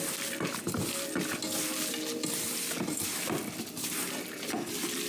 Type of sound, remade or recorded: recorded